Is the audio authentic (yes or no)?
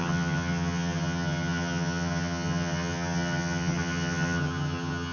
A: no